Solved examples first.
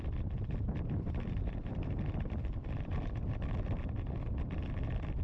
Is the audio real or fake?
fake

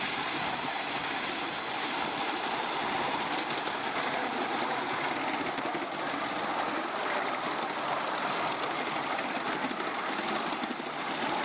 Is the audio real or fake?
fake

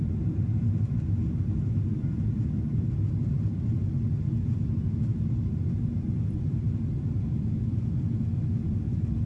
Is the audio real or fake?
fake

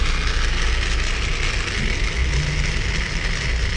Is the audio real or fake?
real